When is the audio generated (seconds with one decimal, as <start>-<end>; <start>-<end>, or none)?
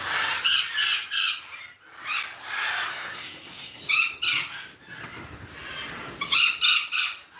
2.9-3.8